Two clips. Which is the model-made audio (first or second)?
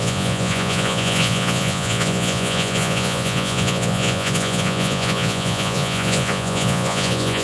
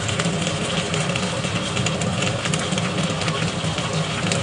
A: first